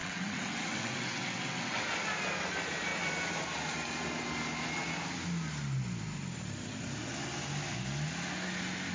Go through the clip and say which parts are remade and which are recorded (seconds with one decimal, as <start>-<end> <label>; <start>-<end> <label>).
0.0-1.8 remade; 1.8-8.9 recorded